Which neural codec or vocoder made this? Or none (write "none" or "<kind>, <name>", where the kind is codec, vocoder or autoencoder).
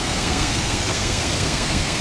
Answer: codec, SNAC